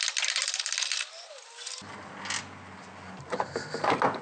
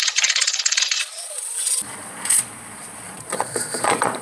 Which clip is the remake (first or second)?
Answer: second